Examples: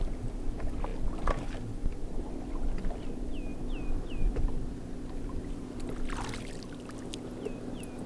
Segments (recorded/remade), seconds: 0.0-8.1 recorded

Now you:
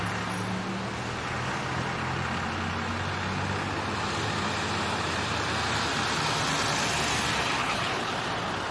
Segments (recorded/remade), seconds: 0.0-7.6 recorded; 7.6-8.1 remade; 8.1-8.7 recorded

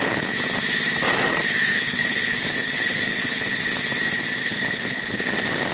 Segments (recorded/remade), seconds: 0.0-1.7 recorded; 1.7-3.6 remade; 3.6-4.4 recorded; 4.4-5.3 remade; 5.3-5.7 recorded

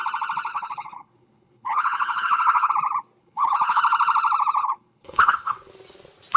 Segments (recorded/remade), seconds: 0.0-0.5 recorded; 0.5-2.7 remade; 2.7-3.2 recorded; 3.2-3.8 remade; 3.8-4.6 recorded; 4.6-5.7 remade; 5.7-6.4 recorded

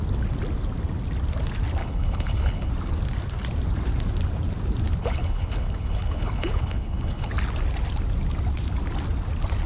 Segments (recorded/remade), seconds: 0.0-1.8 recorded; 1.8-2.7 remade; 2.7-5.0 recorded; 5.0-7.3 remade; 7.3-9.7 recorded

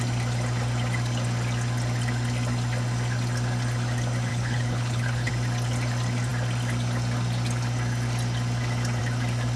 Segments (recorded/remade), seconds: 0.0-4.3 recorded; 4.3-5.3 remade; 5.3-9.6 recorded

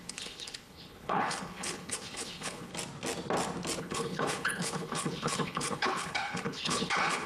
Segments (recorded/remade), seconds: 0.0-2.7 remade; 2.7-3.8 recorded; 3.8-7.3 remade

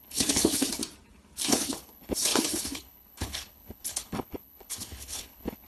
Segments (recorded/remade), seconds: 0.0-0.8 remade; 0.8-1.4 recorded; 1.4-5.7 remade